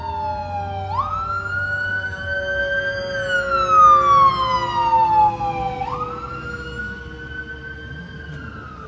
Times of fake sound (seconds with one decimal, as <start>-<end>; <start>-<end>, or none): none